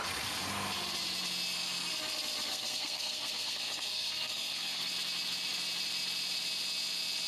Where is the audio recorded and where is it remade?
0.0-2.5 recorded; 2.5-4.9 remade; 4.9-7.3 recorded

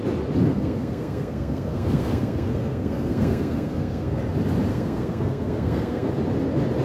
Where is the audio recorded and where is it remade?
0.0-0.5 recorded; 0.5-4.2 remade; 4.2-4.7 recorded; 4.7-6.1 remade; 6.1-6.8 recorded

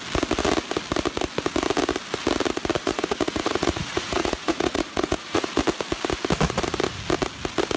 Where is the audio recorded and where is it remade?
0.0-2.8 recorded; 2.8-5.5 remade; 5.5-7.8 recorded

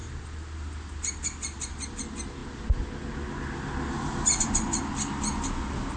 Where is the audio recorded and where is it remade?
0.0-6.0 recorded

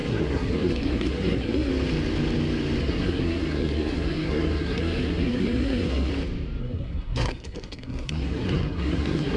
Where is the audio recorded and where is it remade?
0.0-1.7 remade; 1.7-2.8 recorded; 2.8-6.1 remade; 6.1-6.6 recorded; 6.6-9.4 remade

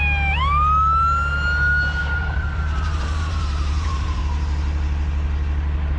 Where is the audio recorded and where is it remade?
0.0-2.0 recorded; 2.0-4.2 remade; 4.2-6.0 recorded

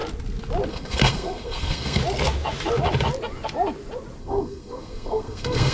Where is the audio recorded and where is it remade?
0.0-0.7 recorded; 0.7-2.0 remade; 2.0-4.2 recorded; 4.2-5.7 remade